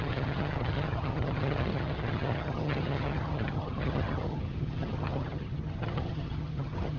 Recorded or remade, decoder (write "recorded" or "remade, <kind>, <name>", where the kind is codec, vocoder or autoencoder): remade, vocoder, HiFi-GAN